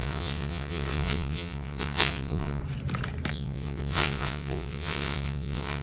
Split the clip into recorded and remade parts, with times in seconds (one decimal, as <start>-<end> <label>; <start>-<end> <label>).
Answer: 0.0-2.6 remade; 2.6-3.3 recorded; 3.3-5.8 remade